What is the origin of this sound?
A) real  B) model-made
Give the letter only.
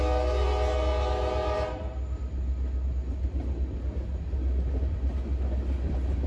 A